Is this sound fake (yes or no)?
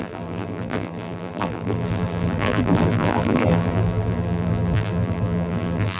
yes